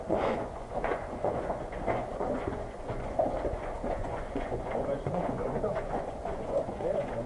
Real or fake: fake